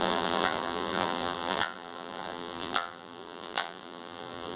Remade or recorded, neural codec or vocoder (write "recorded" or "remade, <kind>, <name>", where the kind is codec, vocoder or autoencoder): remade, vocoder, BigVGAN v2